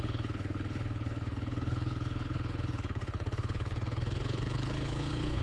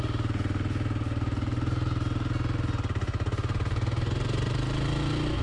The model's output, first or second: first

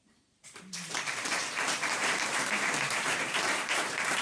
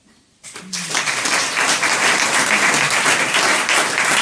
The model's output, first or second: first